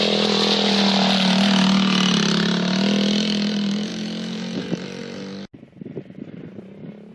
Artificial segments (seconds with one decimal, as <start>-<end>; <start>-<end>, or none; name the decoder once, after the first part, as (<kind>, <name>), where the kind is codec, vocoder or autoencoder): none